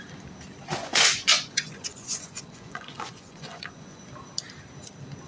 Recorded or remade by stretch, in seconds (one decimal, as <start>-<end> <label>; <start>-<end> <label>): 0.0-0.8 recorded; 0.8-4.0 remade; 4.0-5.3 recorded